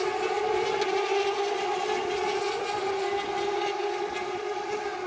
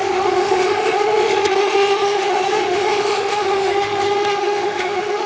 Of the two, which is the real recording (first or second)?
first